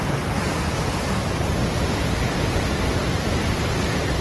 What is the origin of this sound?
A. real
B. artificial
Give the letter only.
A